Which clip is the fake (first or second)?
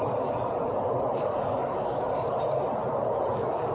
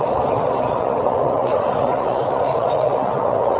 second